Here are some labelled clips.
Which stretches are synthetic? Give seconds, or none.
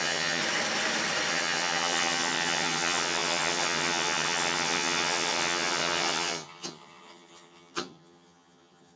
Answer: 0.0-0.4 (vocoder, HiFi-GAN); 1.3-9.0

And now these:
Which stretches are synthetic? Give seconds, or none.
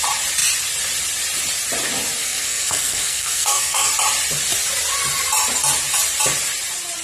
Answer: 2.2-3.9 (codec, SNAC)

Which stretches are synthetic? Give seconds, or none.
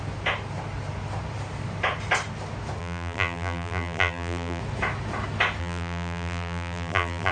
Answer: 2.8-4.6 (vocoder, BigVGAN v2); 5.6-7.3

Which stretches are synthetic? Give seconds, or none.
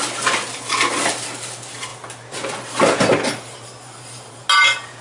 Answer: none